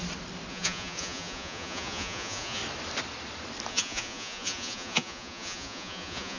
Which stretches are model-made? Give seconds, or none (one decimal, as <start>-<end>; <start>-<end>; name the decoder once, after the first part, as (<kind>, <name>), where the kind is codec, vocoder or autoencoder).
0.5-2.6 (vocoder, Vocos); 3.7-6.4